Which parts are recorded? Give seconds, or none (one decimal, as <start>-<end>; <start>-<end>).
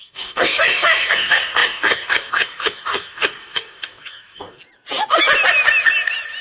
4.6-6.4